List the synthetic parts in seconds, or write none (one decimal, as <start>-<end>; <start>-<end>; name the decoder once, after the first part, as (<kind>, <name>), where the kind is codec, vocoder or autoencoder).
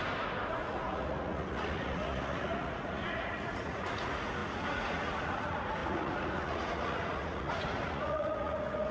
0.5-8.9 (vocoder, Vocos)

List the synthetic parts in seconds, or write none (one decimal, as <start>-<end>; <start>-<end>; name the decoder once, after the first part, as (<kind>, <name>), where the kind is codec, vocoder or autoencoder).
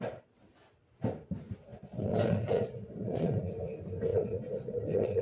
1.7-3.5 (vocoder, Vocos); 4.1-5.2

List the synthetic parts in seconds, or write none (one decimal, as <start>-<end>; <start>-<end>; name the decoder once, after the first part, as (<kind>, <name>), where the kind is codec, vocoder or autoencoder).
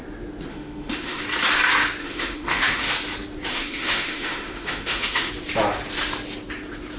0.5-1.2 (autoencoder, DAC-VAE); 2.0-2.9; 3.5-5.3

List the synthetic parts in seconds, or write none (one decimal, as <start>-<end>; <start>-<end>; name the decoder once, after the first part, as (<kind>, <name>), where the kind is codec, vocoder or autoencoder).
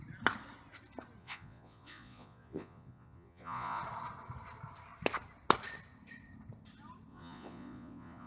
1.2-3.8 (vocoder, Vocos); 7.1-8.3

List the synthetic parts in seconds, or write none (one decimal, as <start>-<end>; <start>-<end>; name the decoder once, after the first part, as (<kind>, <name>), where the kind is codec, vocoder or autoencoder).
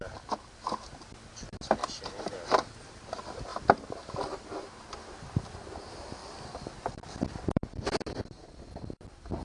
1.8-3.1 (vocoder, BigVGAN v2); 6.2-7.8; 8.4-9.4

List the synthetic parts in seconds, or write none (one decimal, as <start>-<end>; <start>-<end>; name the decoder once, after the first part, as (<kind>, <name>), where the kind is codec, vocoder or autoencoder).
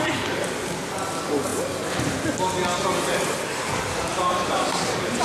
4.1-5.2 (vocoder, BigVGAN v2)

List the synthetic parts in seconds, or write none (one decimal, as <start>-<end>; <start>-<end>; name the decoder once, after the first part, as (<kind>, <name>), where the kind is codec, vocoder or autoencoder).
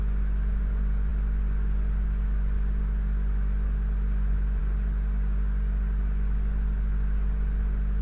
none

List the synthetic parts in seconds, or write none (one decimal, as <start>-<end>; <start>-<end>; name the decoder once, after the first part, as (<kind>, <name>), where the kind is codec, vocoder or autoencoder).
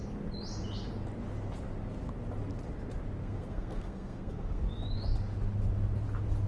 3.2-4.6 (codec, SNAC)